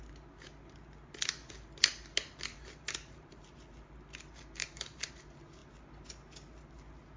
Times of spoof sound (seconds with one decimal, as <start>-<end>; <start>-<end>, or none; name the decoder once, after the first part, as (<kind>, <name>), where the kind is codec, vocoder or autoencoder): 2.5-3.4 (vocoder, BigVGAN v2); 4.6-5.1